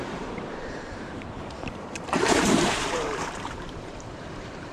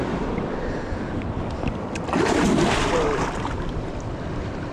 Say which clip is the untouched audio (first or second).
second